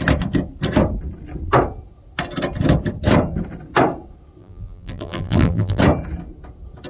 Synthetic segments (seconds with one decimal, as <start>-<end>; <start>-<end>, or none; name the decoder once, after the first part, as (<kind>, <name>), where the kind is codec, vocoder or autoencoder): 4.4-5.8 (vocoder, BigVGAN v2)